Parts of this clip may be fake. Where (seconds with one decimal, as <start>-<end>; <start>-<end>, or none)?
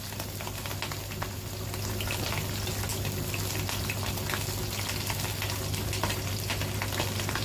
none